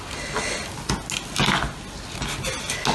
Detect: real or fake real